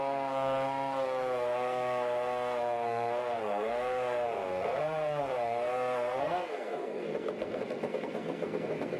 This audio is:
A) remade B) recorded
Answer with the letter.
A